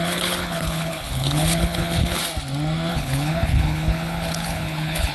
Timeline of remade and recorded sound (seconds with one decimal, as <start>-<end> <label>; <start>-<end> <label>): 0.0-2.2 remade; 2.2-2.9 recorded; 2.9-5.1 remade